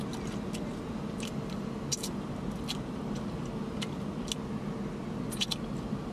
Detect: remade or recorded recorded